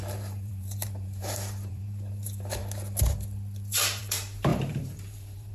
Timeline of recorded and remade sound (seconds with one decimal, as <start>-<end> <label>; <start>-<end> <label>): 0.0-2.6 remade; 2.6-4.0 recorded; 4.0-5.5 remade